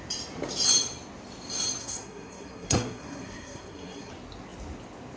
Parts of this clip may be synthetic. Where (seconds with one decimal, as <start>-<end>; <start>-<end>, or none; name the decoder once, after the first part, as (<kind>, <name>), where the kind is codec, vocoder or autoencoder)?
1.8-4.1 (codec, SNAC)